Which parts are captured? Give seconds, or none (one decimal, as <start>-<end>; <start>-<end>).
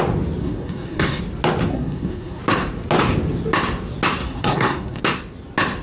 0.0-0.4; 1.2-1.7; 2.4-4.2; 5.0-5.8